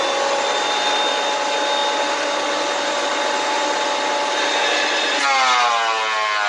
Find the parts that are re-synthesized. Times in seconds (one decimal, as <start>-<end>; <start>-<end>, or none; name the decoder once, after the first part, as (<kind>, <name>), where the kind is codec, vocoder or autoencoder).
none